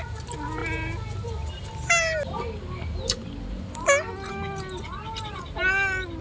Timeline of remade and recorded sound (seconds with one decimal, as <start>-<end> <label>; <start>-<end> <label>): 0.0-6.2 recorded